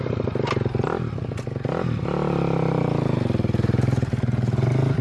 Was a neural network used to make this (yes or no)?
no